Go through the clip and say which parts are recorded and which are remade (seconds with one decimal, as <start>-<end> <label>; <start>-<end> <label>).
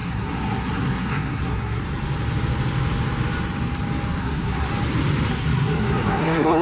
0.0-1.8 remade; 1.8-4.2 recorded; 4.2-4.7 remade; 4.7-5.3 recorded; 5.3-6.6 remade